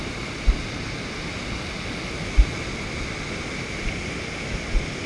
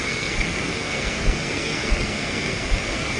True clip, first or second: first